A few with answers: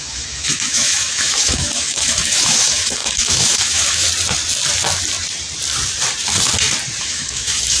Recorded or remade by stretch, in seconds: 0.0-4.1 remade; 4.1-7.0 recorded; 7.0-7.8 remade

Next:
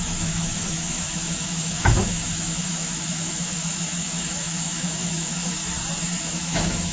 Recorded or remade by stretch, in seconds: 0.0-5.6 remade; 5.6-6.2 recorded; 6.2-6.9 remade

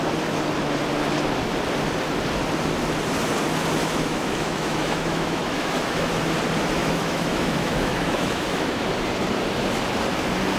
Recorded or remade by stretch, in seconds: 0.0-3.8 recorded; 3.8-6.1 remade; 6.1-6.8 recorded; 6.8-8.8 remade; 8.8-10.6 recorded

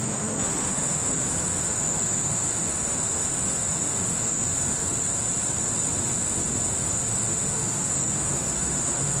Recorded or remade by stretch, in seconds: 0.0-5.1 remade; 5.1-6.7 recorded; 6.7-9.2 remade